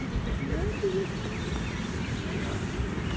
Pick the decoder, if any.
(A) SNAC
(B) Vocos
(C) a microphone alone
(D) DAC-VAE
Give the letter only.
C